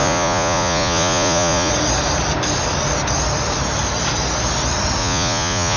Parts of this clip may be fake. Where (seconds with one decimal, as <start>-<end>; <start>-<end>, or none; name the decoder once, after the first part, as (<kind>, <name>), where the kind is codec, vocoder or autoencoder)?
0.0-1.7 (vocoder, Vocos); 5.0-5.8